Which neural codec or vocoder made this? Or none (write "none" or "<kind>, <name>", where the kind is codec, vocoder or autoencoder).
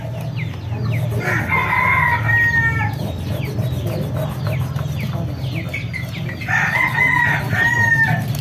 none